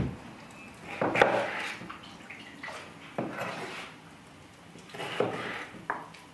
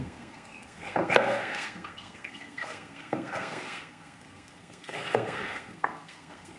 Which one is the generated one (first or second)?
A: second